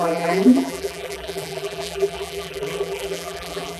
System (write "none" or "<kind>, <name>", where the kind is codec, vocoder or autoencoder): vocoder, BigVGAN v2